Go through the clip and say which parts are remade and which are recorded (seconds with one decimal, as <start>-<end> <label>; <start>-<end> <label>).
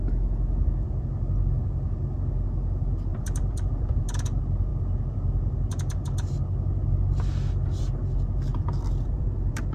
0.0-3.1 recorded; 3.1-4.0 remade; 4.0-8.5 recorded; 8.5-9.7 remade